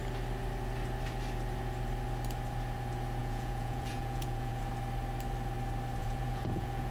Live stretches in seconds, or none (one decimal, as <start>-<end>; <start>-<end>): 0.0-3.2; 4.6-6.0